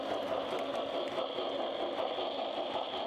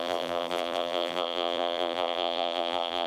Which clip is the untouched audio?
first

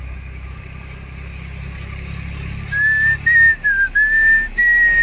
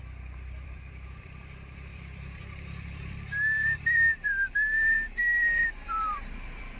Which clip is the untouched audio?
first